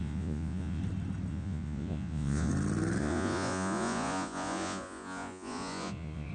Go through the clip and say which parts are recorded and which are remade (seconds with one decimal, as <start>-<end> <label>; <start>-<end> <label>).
0.0-0.8 remade; 0.8-1.3 recorded; 1.3-2.5 remade; 2.5-3.0 recorded; 3.0-6.3 remade